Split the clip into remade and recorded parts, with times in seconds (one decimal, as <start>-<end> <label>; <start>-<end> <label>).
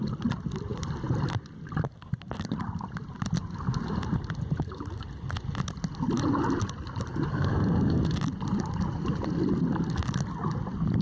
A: 0.0-7.3 recorded; 7.3-8.0 remade; 8.0-11.0 recorded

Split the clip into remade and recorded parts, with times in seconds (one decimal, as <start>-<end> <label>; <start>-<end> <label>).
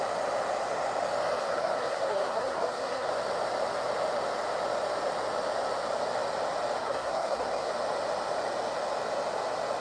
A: 0.0-1.4 recorded; 1.4-3.1 remade; 3.1-6.8 recorded; 6.8-7.7 remade; 7.7-9.8 recorded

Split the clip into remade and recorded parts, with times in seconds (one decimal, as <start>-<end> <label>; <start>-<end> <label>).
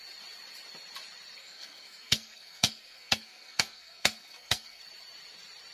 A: 0.0-1.4 recorded; 1.4-4.8 remade; 4.8-5.7 recorded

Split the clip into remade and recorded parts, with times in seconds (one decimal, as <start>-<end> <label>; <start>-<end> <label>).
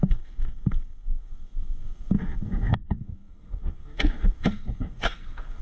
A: 0.0-5.6 remade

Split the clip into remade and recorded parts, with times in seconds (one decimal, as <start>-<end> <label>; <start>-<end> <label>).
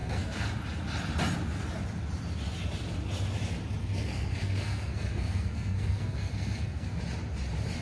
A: 0.0-0.5 remade; 0.5-3.8 recorded; 3.8-7.0 remade; 7.0-7.8 recorded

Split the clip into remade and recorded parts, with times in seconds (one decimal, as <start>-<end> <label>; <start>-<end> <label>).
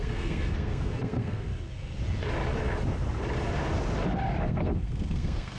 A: 0.0-1.5 remade; 1.5-4.4 recorded; 4.4-5.6 remade